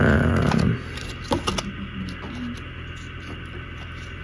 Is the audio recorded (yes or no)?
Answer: yes